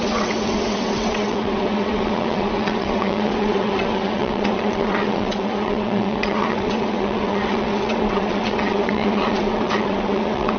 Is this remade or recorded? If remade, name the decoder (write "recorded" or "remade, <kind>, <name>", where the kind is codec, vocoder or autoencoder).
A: remade, vocoder, WaveNeXt